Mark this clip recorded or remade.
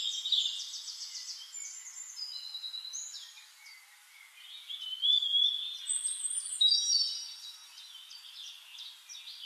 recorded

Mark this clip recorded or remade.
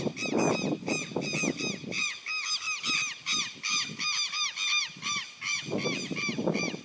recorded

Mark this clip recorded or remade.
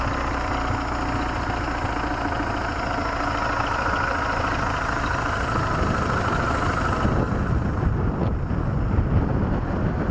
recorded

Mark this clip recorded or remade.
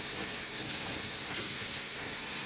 remade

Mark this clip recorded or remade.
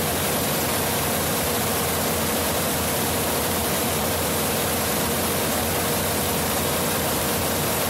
remade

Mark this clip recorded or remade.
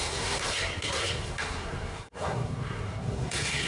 remade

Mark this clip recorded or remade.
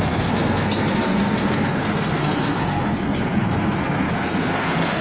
remade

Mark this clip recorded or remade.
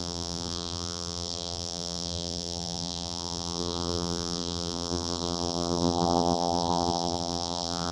remade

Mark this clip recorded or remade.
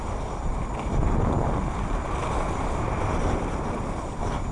remade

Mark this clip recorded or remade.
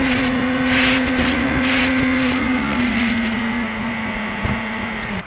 remade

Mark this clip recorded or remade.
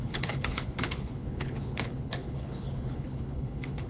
remade